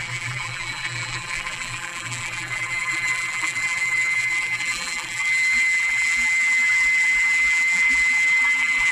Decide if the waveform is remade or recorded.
remade